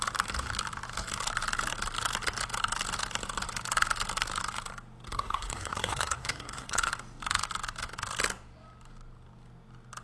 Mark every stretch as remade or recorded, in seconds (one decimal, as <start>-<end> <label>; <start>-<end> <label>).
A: 0.0-5.1 recorded; 5.1-6.9 remade; 6.9-10.0 recorded